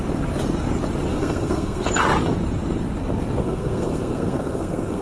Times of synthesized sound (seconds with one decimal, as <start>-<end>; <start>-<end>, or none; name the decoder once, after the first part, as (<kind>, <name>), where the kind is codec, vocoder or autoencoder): 1.1-1.9 (codec, SNAC); 3.4-5.0